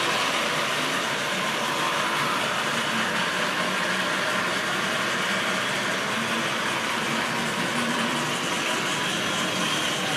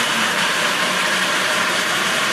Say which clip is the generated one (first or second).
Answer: second